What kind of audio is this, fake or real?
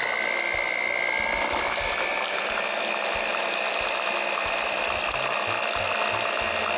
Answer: real